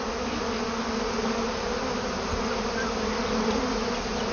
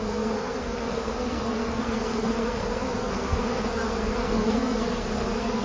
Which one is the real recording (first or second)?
first